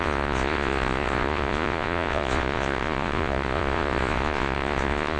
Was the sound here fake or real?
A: fake